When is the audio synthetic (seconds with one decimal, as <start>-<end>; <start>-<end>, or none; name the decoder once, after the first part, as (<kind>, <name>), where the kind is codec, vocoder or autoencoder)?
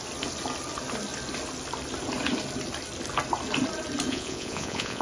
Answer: 4.1-5.0 (vocoder, Vocos)